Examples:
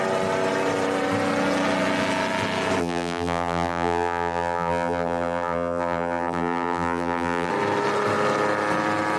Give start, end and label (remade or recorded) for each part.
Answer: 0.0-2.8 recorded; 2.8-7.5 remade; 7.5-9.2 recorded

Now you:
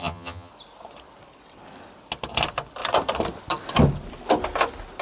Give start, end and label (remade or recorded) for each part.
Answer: 0.0-0.5 remade; 0.5-5.0 recorded

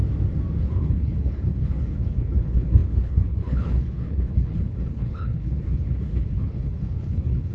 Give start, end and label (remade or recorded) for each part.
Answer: 0.0-0.6 recorded; 0.6-7.5 remade

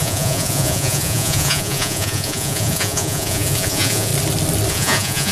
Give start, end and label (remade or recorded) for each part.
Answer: 0.0-4.1 remade; 4.1-4.7 recorded; 4.7-5.3 remade

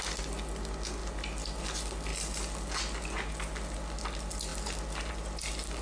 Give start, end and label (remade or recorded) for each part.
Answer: 0.0-5.8 recorded